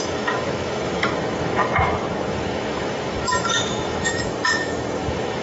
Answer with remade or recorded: remade